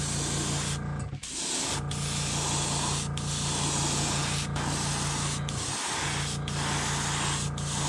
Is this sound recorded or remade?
recorded